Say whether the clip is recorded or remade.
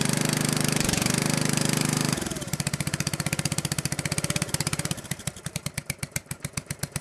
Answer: remade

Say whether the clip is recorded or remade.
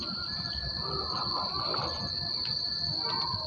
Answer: remade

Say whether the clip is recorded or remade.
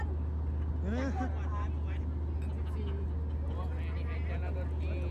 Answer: recorded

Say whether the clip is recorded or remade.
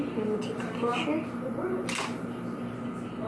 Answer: recorded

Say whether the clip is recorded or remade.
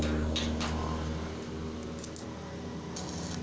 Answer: recorded